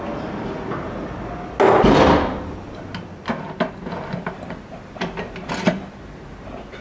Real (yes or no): yes